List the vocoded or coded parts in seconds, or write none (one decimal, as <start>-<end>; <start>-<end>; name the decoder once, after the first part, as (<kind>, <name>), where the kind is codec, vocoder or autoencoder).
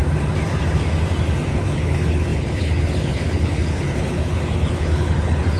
1.5-5.6 (codec, HILCodec)